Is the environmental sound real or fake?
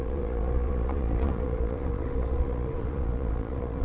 fake